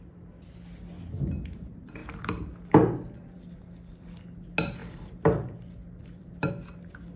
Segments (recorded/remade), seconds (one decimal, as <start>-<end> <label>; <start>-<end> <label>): 0.0-2.0 recorded; 2.0-3.9 remade; 3.9-4.8 recorded; 4.8-6.5 remade; 6.5-7.2 recorded